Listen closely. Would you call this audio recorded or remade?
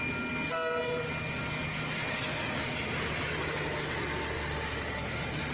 recorded